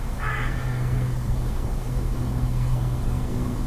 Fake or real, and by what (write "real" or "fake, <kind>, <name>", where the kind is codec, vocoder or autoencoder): fake, codec, SNAC